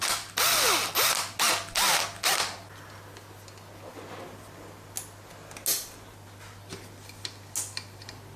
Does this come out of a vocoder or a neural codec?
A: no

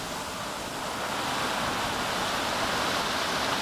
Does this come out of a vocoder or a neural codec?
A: no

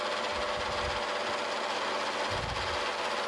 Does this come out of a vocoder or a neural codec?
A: no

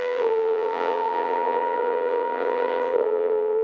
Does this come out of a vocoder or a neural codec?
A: yes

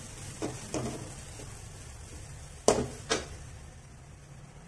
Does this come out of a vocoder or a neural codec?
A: no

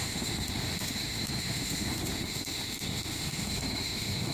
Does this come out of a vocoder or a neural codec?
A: yes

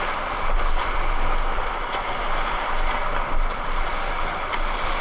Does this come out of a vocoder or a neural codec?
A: no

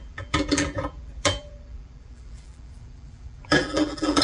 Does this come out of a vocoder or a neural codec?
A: yes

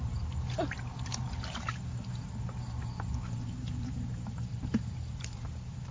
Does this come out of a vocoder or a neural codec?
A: yes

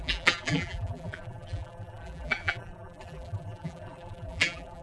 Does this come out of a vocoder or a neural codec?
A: yes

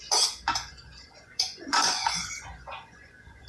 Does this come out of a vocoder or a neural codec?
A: yes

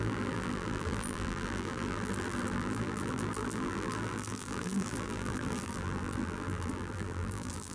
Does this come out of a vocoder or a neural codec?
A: yes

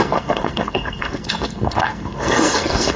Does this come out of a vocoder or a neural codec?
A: yes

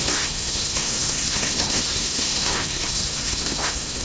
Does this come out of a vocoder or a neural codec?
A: yes